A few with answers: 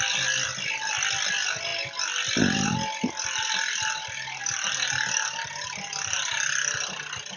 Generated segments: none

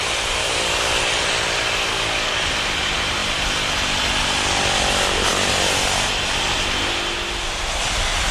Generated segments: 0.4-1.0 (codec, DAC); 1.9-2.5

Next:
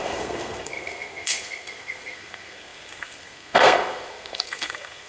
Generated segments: 0.0-5.1 (codec, SNAC)